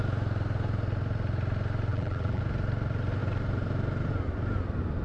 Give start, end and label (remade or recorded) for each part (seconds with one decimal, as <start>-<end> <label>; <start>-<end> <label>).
0.0-1.9 recorded; 1.9-2.4 remade; 2.4-5.0 recorded